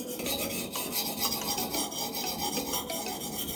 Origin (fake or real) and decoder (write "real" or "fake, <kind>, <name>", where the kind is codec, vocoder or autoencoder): real